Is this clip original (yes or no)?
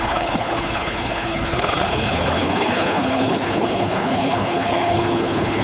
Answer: no